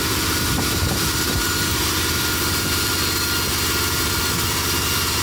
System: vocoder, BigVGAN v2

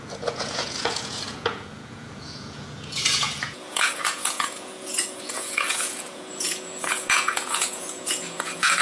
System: vocoder, Vocos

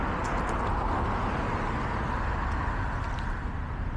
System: none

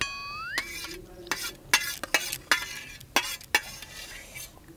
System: none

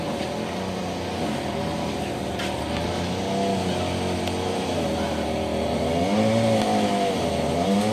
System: none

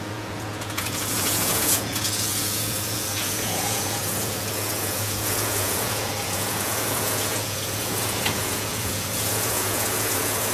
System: vocoder, Vocos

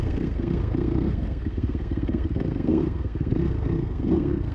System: codec, SNAC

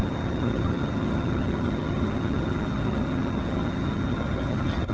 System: vocoder, HiFi-GAN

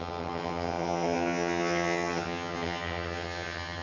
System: vocoder, HiFi-GAN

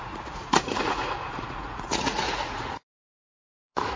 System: vocoder, Vocos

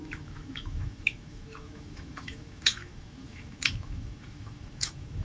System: autoencoder, DAC-VAE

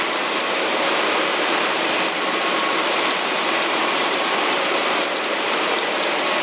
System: vocoder, BigVGAN v2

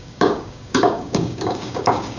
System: codec, DAC